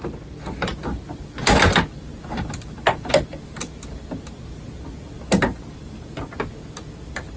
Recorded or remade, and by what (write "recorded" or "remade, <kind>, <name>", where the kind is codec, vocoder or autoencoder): recorded